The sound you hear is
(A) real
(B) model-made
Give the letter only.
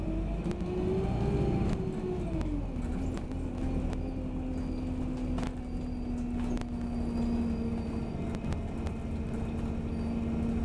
A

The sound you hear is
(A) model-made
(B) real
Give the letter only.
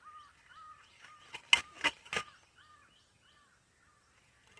B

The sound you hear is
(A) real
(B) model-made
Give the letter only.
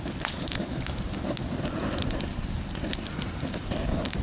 A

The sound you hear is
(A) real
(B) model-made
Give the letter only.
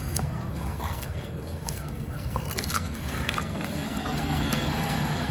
B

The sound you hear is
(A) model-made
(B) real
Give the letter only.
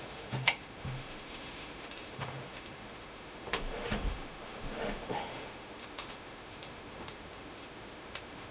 A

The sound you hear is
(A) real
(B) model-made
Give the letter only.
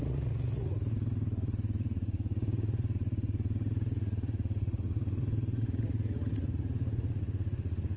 B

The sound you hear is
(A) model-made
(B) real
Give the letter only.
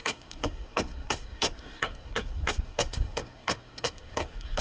A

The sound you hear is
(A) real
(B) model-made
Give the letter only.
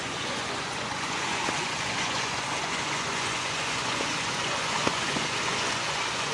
B